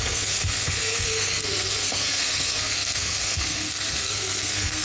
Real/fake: fake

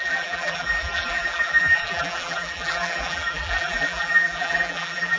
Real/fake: fake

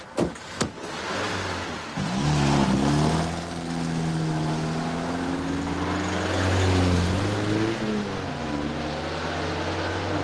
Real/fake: real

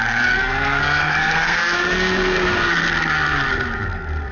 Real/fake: fake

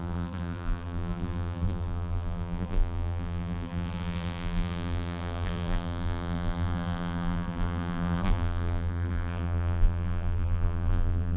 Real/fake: fake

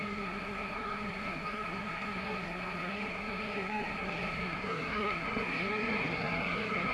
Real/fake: fake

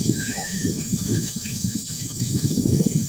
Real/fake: fake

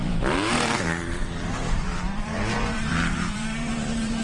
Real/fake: fake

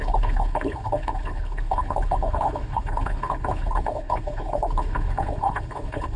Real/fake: fake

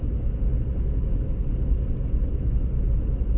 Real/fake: real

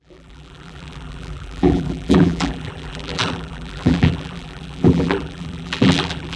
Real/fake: fake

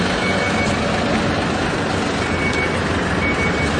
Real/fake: real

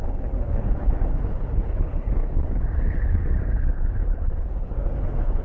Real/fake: fake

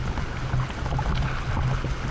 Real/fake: real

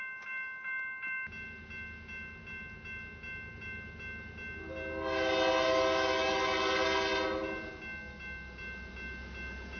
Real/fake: real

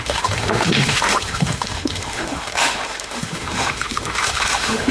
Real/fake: fake